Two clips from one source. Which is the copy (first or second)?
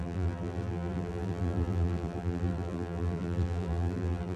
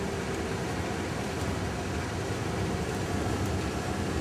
first